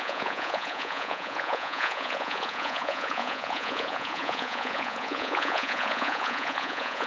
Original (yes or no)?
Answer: no